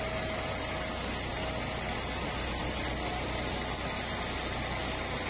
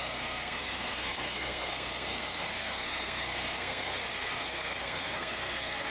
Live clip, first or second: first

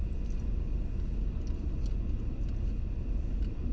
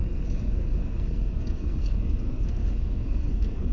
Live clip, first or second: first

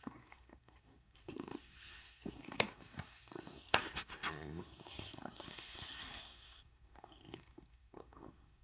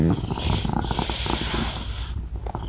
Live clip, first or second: second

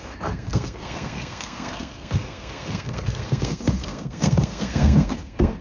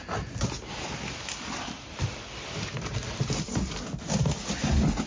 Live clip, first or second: second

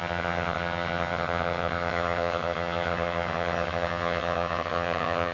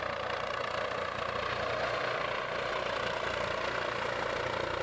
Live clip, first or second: second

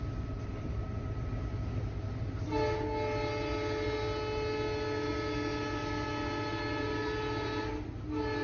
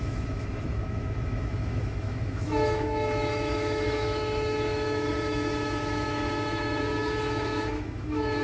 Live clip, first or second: first